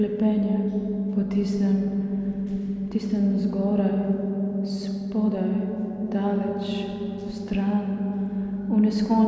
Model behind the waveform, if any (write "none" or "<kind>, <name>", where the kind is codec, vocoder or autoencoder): none